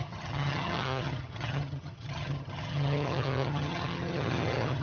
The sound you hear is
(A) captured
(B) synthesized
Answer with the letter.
B